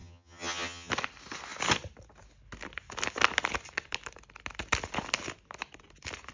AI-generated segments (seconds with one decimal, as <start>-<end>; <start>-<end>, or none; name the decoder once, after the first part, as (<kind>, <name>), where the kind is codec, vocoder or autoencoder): 0.0-0.9 (vocoder, HiFi-GAN)